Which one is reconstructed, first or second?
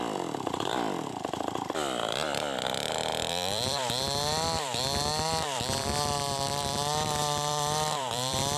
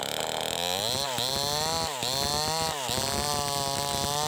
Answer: first